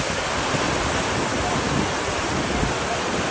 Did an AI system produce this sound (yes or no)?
no